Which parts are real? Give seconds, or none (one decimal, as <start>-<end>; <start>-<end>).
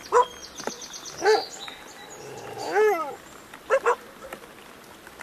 0.0-5.2